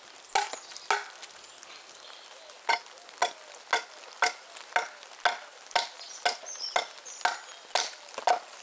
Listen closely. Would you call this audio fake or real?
real